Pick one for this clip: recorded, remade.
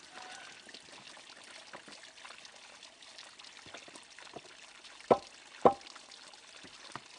recorded